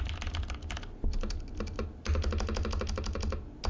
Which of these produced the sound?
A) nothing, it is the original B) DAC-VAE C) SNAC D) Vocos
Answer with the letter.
A